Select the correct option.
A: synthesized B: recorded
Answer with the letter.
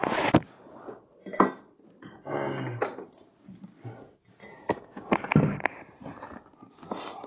B